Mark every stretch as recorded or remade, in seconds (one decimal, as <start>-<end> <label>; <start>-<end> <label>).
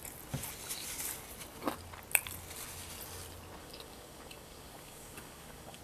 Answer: 0.0-3.6 recorded; 3.6-5.8 remade